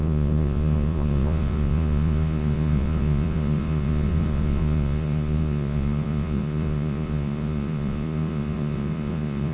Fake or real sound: fake